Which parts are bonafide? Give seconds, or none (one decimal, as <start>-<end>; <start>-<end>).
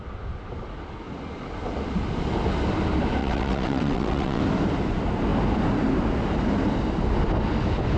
0.0-3.2; 4.4-8.0